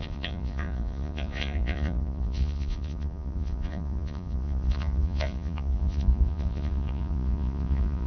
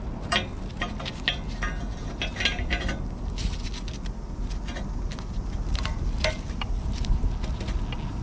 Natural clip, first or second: second